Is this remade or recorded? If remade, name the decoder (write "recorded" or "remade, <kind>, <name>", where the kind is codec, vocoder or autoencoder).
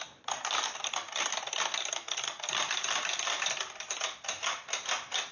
recorded